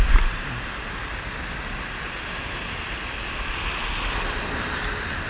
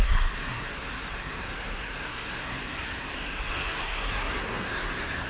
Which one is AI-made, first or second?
second